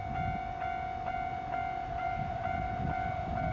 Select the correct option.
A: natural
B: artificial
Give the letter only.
B